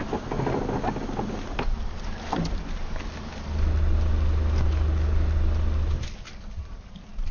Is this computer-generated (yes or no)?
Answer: no